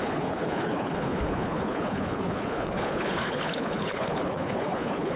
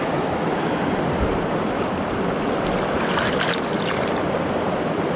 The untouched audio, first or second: second